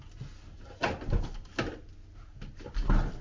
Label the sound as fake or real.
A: real